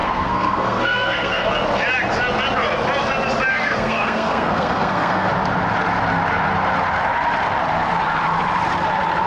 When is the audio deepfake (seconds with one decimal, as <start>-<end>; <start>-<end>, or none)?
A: 0.0-1.5; 3.5-5.3

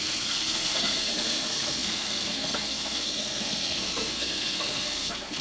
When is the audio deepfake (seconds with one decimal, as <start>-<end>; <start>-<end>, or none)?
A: 0.0-5.4

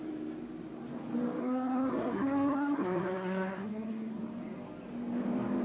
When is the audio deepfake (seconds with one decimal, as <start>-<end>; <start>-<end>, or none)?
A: 1.4-4.2

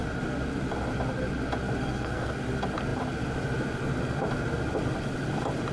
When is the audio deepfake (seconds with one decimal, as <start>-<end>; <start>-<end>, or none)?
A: 1.8-2.3

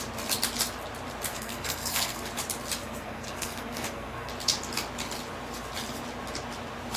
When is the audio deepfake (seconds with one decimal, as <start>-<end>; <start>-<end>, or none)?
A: 1.3-2.3; 2.8-4.3